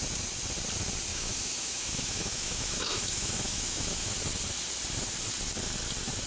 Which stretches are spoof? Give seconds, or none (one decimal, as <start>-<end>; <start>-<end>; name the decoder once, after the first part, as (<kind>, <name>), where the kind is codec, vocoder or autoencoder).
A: 1.1-4.1 (autoencoder, DAC-VAE)